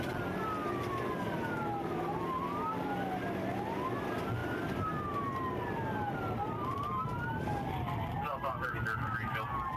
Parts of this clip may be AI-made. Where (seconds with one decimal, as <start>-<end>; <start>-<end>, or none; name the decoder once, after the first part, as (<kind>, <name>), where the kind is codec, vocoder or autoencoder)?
none